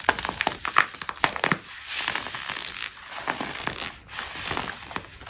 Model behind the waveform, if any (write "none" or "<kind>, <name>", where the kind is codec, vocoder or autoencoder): none